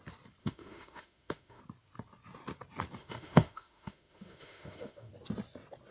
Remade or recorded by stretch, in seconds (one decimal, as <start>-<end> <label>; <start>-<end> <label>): 0.0-0.4 recorded; 0.4-1.6 remade; 1.6-3.0 recorded; 3.0-5.1 remade; 5.1-5.9 recorded